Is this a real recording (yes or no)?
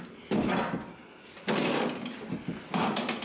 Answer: yes